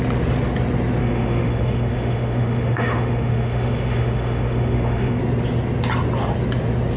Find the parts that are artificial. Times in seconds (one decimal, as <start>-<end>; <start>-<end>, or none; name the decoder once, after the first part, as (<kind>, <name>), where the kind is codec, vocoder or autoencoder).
1.0-5.2 (autoencoder, DAC-VAE)